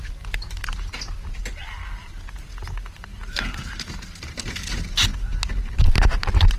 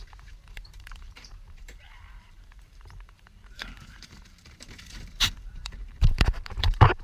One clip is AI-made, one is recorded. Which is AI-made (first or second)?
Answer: second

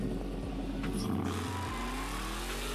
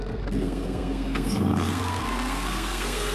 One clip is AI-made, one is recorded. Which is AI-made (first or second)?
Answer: second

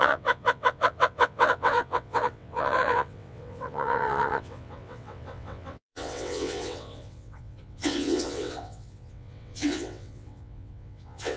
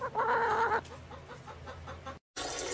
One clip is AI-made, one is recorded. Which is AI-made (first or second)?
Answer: first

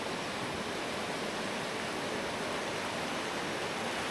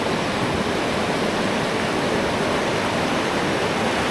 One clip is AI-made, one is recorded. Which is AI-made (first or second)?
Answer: second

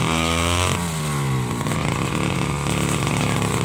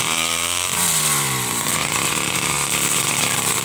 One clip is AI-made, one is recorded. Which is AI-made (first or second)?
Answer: second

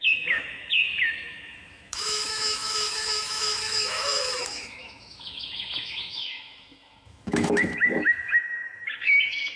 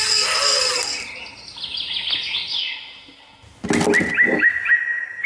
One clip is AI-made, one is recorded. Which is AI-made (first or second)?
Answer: first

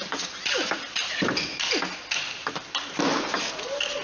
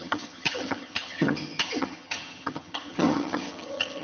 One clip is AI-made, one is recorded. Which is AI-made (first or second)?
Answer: second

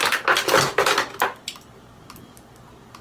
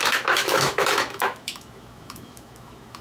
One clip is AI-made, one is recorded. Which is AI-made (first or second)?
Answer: second